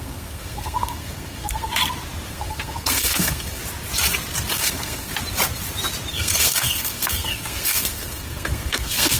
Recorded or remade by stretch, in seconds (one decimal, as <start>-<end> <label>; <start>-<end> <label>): 0.0-1.7 remade; 1.7-2.3 recorded; 2.3-3.6 remade; 3.6-4.5 recorded; 4.5-5.1 remade; 5.1-6.1 recorded; 6.1-9.2 remade